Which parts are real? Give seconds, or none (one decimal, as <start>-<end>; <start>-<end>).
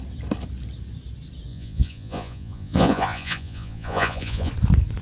0.0-1.5; 4.5-5.0